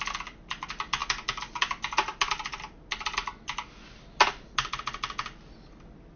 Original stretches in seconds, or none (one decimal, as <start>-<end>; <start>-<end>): 0.0-6.2